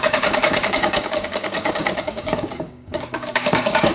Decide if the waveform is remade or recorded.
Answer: remade